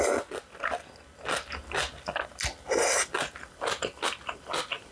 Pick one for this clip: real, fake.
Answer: real